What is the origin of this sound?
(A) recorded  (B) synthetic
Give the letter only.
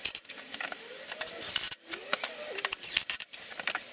B